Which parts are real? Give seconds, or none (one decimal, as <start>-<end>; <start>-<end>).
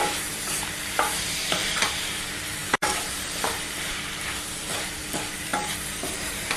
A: 5.5-6.1